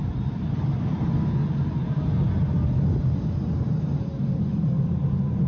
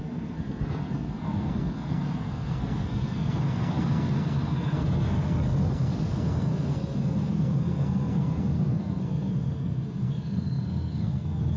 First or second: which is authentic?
first